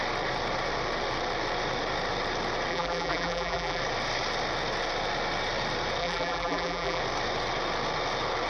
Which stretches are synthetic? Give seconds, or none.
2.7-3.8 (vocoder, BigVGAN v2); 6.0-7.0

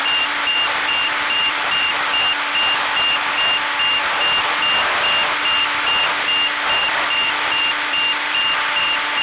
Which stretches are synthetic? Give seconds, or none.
0.0-2.1 (vocoder, BigVGAN v2); 6.8-9.2